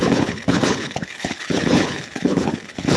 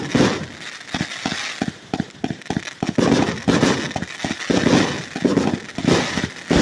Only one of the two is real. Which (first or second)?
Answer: second